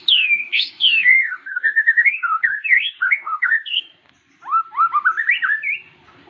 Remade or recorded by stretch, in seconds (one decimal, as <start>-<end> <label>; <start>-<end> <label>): 0.0-3.8 remade; 3.8-6.3 recorded